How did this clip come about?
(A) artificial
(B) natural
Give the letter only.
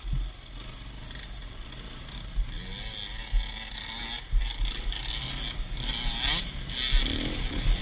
B